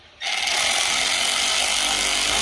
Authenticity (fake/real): real